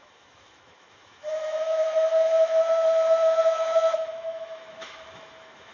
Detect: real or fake fake